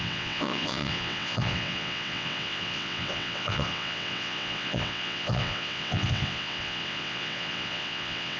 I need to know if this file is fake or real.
fake